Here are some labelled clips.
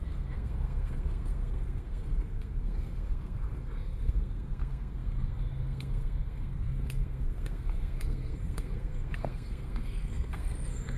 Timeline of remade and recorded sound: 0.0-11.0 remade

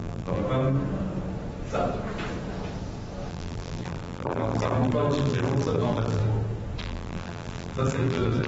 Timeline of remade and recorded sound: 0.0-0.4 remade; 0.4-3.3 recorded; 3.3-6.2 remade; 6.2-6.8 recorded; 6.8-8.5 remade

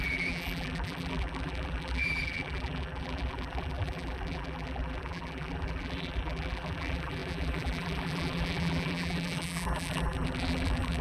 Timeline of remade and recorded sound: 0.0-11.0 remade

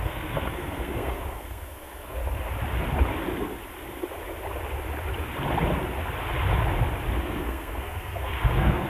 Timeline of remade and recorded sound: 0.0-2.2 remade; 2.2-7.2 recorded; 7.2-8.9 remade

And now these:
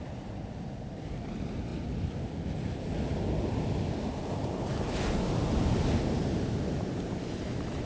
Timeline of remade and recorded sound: 0.0-7.9 recorded

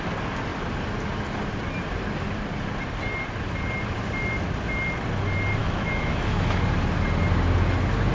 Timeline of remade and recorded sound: 0.0-5.6 recorded; 5.6-6.6 remade; 6.6-8.1 recorded